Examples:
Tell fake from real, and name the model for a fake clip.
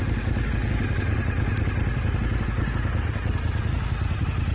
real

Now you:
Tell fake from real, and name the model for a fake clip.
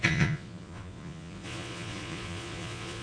fake, vocoder, Vocos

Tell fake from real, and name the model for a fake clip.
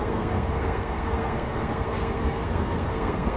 fake, codec, SNAC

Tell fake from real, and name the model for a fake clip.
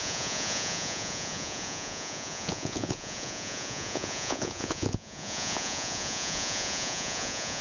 fake, vocoder, Vocos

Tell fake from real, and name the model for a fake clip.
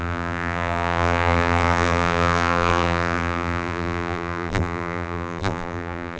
fake, vocoder, BigVGAN v2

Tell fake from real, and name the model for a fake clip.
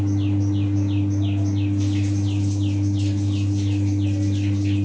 real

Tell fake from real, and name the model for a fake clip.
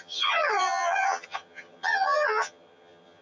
fake, vocoder, HiFi-GAN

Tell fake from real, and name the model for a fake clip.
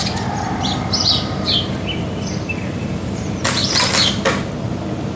real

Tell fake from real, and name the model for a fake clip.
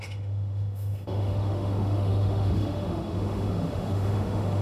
fake, autoencoder, DAC-VAE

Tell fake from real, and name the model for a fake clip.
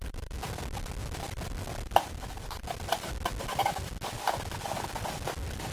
real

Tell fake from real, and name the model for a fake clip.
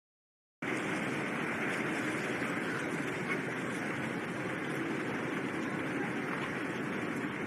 real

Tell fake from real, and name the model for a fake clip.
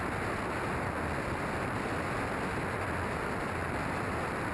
real